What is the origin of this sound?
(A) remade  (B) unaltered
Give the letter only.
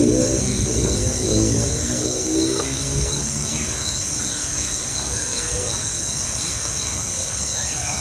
A